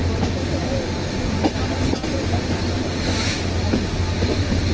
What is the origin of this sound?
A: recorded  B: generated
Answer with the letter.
A